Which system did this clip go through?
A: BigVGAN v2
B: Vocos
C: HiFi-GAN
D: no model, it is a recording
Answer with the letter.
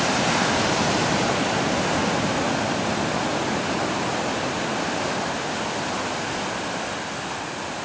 D